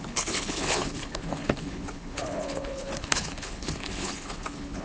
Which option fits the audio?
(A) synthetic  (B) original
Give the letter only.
A